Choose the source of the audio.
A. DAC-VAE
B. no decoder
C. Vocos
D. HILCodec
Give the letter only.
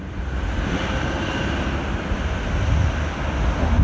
B